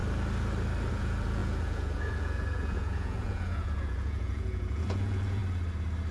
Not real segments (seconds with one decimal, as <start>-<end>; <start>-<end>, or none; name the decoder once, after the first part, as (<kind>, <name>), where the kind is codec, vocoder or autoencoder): 0.9-5.4 (vocoder, Vocos)